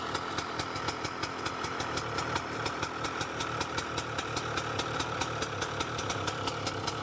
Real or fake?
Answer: fake